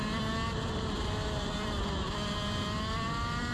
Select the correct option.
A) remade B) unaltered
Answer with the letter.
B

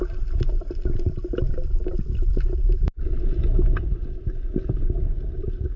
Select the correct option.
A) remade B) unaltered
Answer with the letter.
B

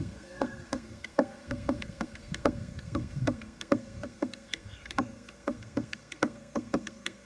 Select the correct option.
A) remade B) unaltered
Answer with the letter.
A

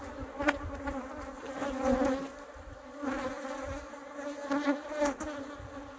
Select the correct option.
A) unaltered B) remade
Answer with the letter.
A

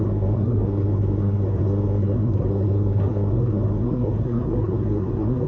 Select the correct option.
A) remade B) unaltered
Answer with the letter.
A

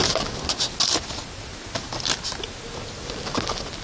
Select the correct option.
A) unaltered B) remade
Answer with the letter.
A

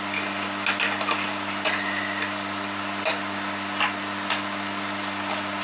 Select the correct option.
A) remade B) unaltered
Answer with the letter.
B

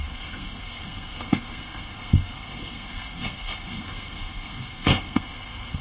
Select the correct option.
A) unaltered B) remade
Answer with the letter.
B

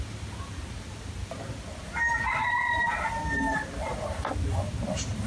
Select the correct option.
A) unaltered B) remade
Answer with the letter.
A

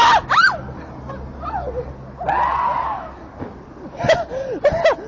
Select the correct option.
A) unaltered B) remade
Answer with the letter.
A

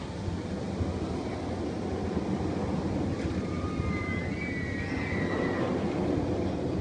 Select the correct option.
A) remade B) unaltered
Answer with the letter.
B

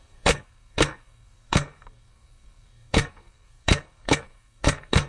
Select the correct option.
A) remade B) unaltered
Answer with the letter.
A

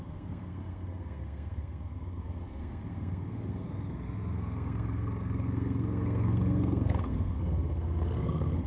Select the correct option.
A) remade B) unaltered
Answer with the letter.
A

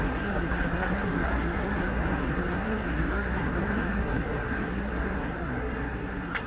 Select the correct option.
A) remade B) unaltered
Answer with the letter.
A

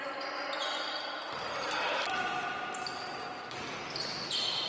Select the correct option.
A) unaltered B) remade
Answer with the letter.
A